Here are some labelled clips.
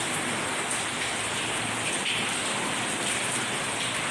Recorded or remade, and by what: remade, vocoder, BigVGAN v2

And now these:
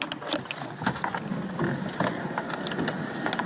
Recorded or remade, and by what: recorded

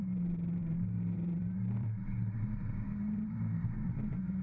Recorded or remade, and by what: remade, vocoder, BigVGAN v2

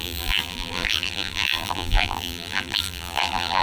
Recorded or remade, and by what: remade, vocoder, BigVGAN v2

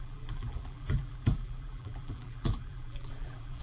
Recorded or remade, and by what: remade, vocoder, BigVGAN v2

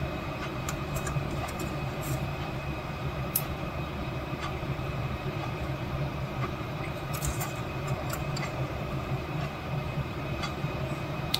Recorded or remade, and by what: remade, vocoder, BigVGAN v2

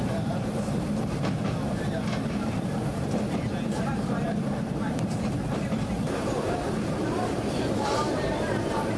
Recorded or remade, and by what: remade, vocoder, BigVGAN v2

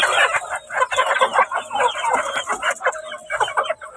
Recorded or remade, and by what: recorded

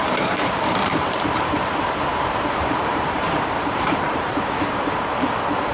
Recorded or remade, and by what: remade, vocoder, BigVGAN v2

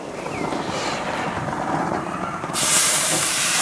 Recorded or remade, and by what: remade, vocoder, BigVGAN v2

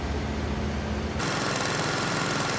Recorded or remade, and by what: recorded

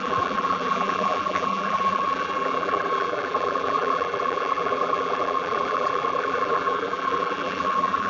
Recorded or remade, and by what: remade, vocoder, BigVGAN v2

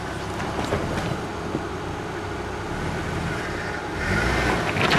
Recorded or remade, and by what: recorded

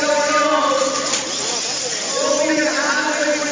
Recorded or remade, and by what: remade, vocoder, BigVGAN v2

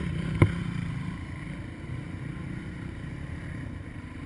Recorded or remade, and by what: remade, vocoder, BigVGAN v2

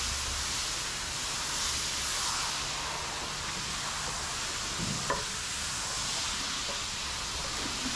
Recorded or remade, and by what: recorded